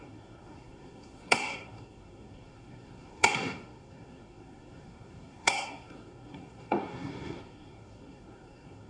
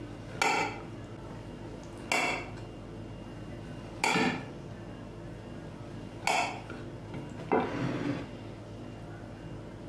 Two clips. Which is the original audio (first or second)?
second